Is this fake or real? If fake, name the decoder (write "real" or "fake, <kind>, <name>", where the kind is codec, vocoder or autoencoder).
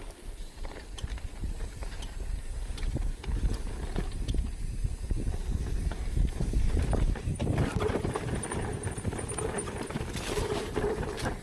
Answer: fake, vocoder, BigVGAN v2